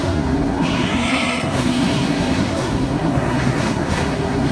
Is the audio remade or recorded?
remade